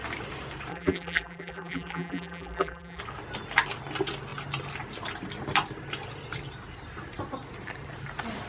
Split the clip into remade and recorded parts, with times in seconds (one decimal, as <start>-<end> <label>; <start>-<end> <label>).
0.0-0.7 recorded; 0.7-3.0 remade; 3.0-8.5 recorded